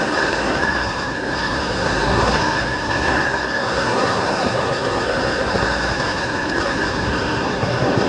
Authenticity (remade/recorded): remade